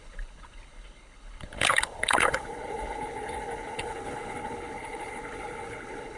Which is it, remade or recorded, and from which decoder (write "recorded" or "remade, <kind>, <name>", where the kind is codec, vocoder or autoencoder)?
remade, codec, HILCodec